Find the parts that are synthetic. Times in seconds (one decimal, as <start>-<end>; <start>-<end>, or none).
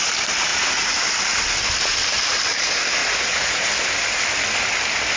0.5-1.0; 3.0-3.7